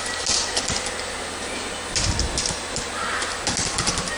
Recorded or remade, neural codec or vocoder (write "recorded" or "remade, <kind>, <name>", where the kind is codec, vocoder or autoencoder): recorded